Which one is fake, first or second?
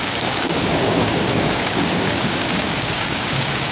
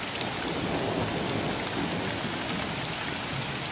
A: first